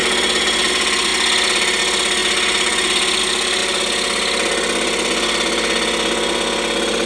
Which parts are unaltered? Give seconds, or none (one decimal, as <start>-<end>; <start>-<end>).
0.0-7.1

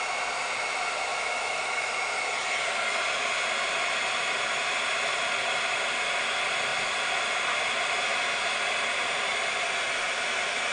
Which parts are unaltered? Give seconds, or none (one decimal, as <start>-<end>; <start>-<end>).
0.0-1.1; 1.9-10.7

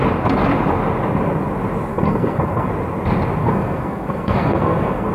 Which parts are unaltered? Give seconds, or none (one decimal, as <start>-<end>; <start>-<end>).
0.0-1.9; 2.7-3.4

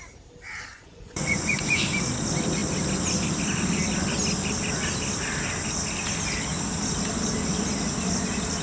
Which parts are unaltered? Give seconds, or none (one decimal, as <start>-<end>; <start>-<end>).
0.0-0.7; 1.8-8.6

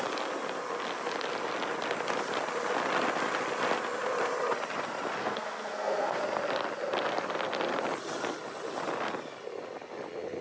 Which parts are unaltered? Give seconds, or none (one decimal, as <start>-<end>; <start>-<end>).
0.0-5.2; 6.2-10.4

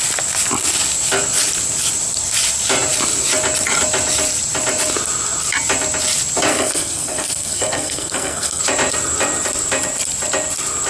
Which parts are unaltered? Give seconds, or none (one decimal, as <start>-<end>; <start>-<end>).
0.0-6.5; 8.6-10.9

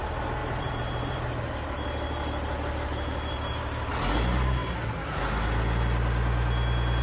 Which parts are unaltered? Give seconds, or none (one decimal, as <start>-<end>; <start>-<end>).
0.0-0.4; 3.9-7.0